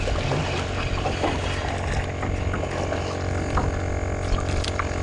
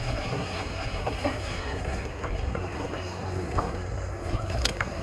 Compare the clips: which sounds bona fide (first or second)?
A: first